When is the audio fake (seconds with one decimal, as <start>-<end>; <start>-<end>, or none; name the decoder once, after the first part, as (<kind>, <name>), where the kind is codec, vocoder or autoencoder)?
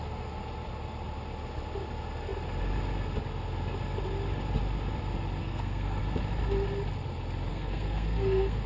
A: 5.4-6.0 (codec, SNAC); 7.5-8.7